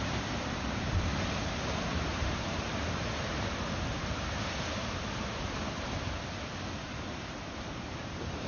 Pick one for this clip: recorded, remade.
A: remade